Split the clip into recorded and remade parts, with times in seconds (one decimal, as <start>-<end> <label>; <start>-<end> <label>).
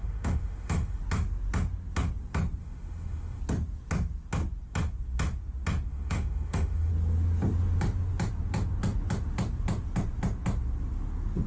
0.0-1.0 remade; 1.0-2.6 recorded; 2.6-3.4 remade; 3.4-5.9 recorded; 5.9-6.9 remade; 6.9-11.5 recorded